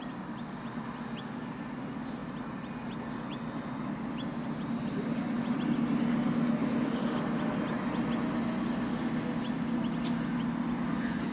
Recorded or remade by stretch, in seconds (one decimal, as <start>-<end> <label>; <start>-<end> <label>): 0.0-11.3 recorded